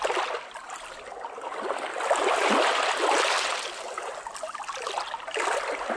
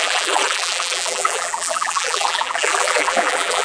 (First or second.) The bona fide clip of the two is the first